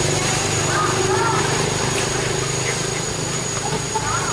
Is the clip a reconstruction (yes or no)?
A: no